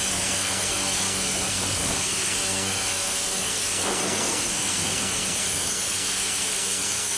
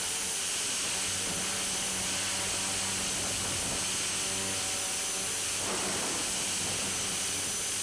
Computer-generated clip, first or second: first